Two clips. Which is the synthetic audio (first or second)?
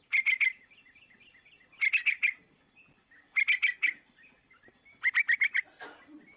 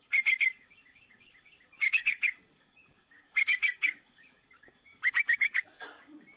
second